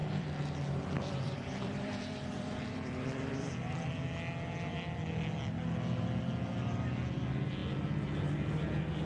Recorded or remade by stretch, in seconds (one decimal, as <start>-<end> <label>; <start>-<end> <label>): 0.0-3.5 remade; 3.5-9.1 recorded